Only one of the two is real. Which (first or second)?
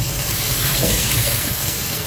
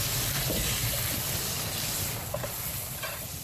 second